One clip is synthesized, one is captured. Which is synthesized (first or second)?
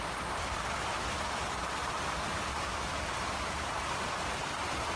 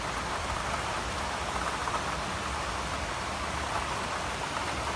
first